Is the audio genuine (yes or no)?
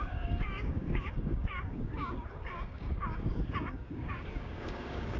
no